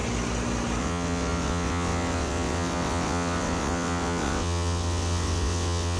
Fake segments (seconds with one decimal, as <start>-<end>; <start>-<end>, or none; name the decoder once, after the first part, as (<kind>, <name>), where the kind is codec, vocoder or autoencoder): 0.8-6.0 (vocoder, WaveNeXt)